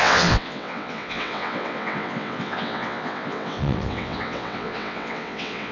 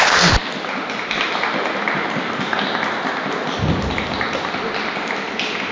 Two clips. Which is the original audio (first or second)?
second